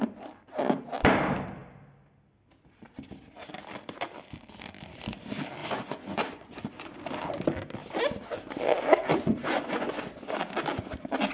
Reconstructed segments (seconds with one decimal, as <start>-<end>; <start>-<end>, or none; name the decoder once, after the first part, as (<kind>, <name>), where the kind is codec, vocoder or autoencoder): 5.6-6.6 (vocoder, Vocos); 9.1-10.4